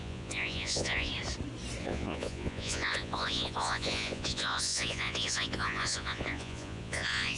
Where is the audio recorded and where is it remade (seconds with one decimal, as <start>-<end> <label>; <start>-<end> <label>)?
0.0-1.1 remade; 1.1-1.8 recorded; 1.8-7.4 remade